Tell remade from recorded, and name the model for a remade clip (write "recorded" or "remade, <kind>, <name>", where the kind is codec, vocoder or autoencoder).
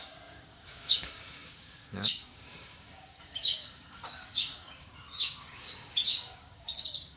remade, codec, DAC